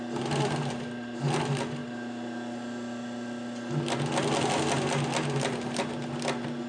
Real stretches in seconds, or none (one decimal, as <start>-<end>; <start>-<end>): 0.0-6.7